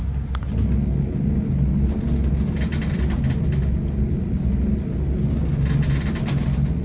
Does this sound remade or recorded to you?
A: recorded